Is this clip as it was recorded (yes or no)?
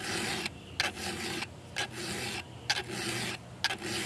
yes